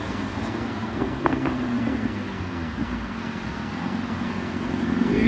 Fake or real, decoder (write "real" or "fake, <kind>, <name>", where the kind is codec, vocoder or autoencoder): fake, codec, SNAC